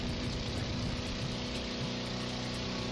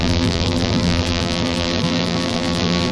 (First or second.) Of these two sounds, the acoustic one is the first